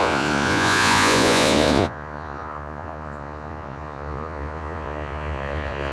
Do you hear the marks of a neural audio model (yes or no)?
yes